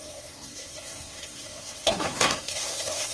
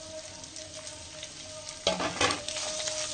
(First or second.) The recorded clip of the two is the second